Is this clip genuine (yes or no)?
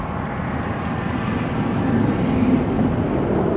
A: yes